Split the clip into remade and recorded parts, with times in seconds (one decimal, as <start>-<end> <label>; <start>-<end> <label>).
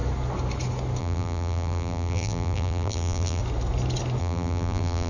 0.0-1.0 recorded; 1.0-3.4 remade; 3.4-4.2 recorded; 4.2-5.1 remade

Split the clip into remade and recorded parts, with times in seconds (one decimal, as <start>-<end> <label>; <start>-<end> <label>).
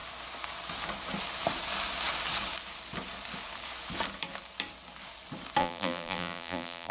0.0-5.6 recorded; 5.6-6.9 remade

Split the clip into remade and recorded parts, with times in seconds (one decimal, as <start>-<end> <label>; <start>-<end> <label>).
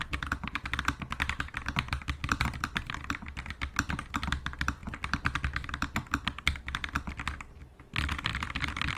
0.0-2.2 recorded; 2.2-2.8 remade; 2.8-8.3 recorded; 8.3-9.0 remade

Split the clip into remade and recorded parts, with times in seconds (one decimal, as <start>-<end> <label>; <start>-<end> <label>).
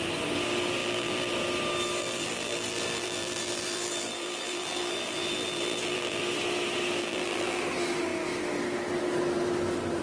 0.0-0.8 recorded; 0.8-1.3 remade; 1.3-2.0 recorded; 2.0-6.2 remade; 6.2-7.0 recorded; 7.0-7.6 remade; 7.6-10.0 recorded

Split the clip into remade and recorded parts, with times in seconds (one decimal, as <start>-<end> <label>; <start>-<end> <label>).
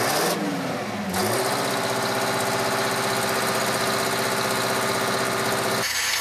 0.0-6.2 recorded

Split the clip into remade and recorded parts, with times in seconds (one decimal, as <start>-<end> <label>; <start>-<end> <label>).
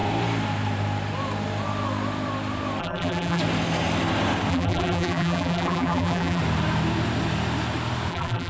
0.0-2.8 recorded; 2.8-3.4 remade; 3.4-4.5 recorded; 4.5-6.4 remade; 6.4-8.1 recorded; 8.1-8.5 remade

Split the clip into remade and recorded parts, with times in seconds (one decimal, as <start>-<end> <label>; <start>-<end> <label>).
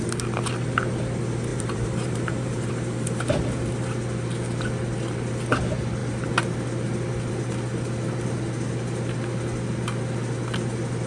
0.0-1.5 recorded; 1.5-2.7 remade; 2.7-11.1 recorded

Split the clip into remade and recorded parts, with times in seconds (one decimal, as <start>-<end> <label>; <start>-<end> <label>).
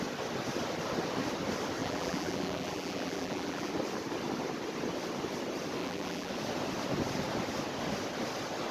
0.0-1.8 recorded; 1.8-3.7 remade; 3.7-5.8 recorded; 5.8-6.3 remade; 6.3-8.7 recorded